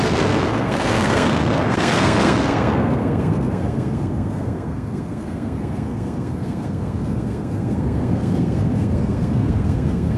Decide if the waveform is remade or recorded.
remade